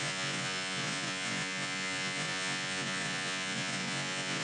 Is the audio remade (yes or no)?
yes